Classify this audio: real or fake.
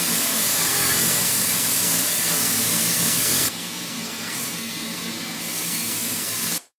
fake